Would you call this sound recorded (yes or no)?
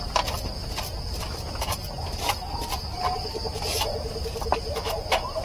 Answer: yes